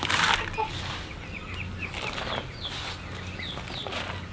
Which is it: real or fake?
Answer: real